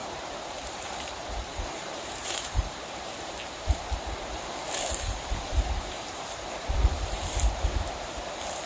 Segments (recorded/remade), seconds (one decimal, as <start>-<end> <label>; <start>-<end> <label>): 0.0-4.4 remade; 4.4-5.5 recorded; 5.5-7.1 remade; 7.1-8.7 recorded